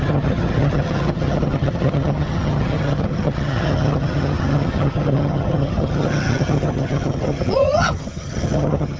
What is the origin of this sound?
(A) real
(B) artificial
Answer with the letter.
B